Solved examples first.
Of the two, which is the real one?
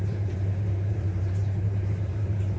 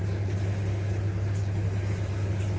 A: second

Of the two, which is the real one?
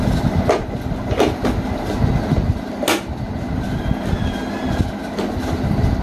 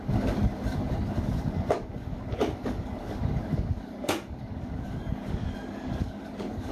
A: first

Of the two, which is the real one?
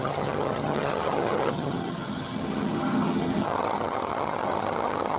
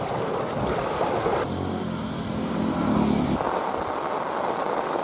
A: second